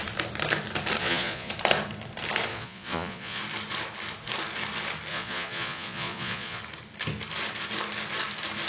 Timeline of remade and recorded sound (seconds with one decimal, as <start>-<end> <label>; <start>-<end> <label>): 0.0-1.0 recorded; 1.0-1.5 remade; 1.5-2.5 recorded; 2.5-3.4 remade; 3.4-5.1 recorded; 5.1-6.6 remade; 6.6-8.7 recorded